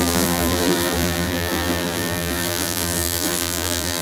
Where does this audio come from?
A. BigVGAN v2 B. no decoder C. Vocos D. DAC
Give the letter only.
A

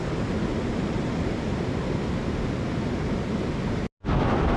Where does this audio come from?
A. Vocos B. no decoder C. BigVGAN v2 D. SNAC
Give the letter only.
B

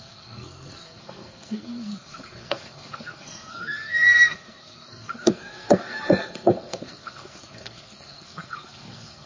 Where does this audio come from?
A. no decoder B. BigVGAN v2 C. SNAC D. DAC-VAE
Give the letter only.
C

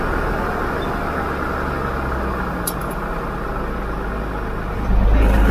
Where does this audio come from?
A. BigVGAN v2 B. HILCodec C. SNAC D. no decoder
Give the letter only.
D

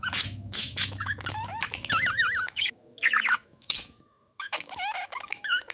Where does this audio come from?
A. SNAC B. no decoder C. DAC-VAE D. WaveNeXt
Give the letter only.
C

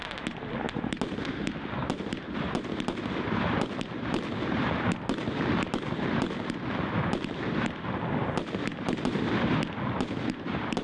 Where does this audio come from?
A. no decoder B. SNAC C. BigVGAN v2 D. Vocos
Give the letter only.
A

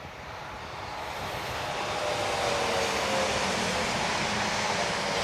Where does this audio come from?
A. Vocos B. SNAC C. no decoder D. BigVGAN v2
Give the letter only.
C